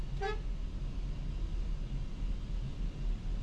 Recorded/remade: recorded